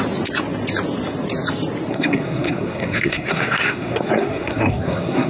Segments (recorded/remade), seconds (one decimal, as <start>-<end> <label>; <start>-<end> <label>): 0.0-1.9 recorded; 1.9-5.3 remade